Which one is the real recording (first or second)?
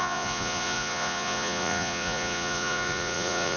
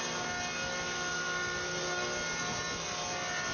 second